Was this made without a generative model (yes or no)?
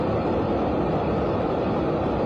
yes